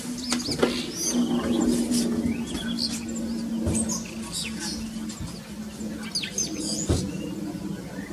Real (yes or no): yes